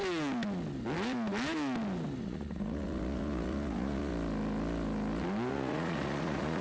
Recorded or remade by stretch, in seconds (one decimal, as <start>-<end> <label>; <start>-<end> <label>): 0.0-2.2 recorded; 2.2-4.1 remade; 4.1-5.5 recorded; 5.5-6.6 remade